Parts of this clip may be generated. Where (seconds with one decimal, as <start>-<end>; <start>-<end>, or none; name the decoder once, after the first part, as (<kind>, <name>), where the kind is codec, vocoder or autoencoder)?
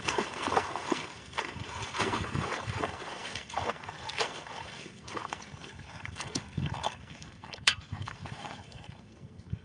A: 0.0-9.6 (codec, SNAC)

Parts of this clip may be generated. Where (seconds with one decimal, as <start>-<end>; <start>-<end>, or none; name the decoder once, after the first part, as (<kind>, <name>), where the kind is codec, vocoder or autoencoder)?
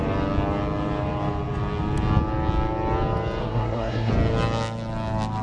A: 3.4-4.1 (codec, SNAC)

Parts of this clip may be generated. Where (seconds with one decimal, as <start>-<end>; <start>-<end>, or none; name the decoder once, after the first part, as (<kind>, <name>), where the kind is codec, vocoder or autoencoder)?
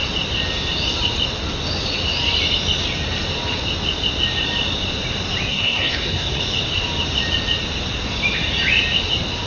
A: 5.5-6.4 (codec, SNAC)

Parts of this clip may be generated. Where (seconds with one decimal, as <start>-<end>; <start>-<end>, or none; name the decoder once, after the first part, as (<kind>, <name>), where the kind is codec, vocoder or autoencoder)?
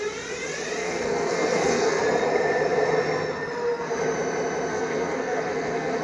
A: 0.8-2.0 (codec, SNAC); 4.7-6.0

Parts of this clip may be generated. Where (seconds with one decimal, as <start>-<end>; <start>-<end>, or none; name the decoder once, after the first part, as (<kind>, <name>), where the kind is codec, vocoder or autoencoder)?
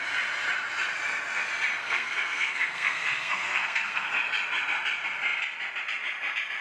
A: 1.8-4.1 (codec, SNAC)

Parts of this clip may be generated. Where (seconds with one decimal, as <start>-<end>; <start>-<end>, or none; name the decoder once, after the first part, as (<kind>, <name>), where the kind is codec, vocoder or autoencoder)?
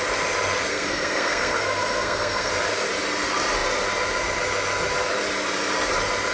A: 0.7-2.5 (codec, SNAC)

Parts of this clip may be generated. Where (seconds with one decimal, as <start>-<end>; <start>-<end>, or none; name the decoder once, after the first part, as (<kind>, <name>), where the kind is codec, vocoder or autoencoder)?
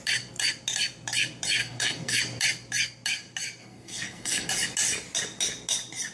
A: 1.6-2.2 (codec, SNAC); 3.6-4.5